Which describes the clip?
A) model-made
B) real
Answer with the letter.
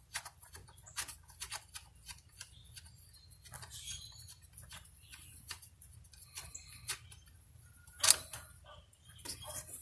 B